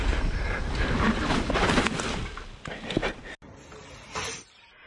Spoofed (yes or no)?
no